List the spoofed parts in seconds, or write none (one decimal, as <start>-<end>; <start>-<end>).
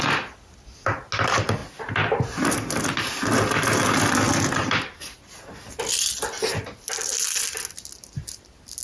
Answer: none